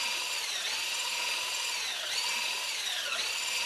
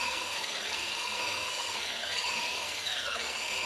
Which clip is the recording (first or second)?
first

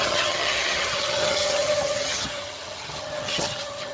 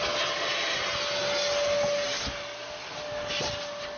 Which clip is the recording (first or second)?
second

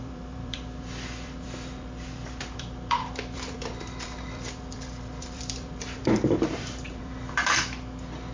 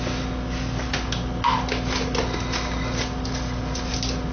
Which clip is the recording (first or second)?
second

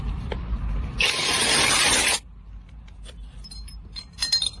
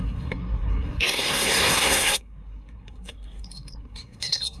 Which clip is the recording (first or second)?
first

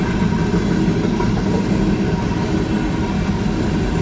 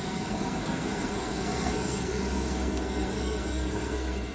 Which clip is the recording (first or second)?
first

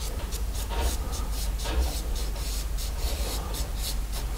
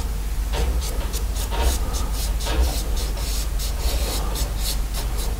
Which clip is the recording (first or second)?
second